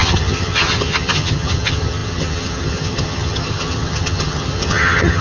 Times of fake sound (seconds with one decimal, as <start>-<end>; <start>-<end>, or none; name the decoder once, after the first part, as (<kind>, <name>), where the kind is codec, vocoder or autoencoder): 0.0-5.2 (vocoder, HiFi-GAN)